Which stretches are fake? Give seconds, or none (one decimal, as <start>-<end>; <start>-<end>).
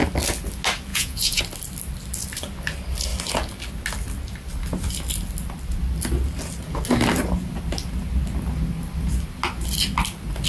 0.9-1.4